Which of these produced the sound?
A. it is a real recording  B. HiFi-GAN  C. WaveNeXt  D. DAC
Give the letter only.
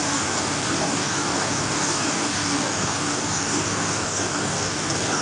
D